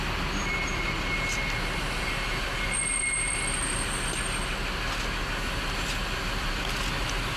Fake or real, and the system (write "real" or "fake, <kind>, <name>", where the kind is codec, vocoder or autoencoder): real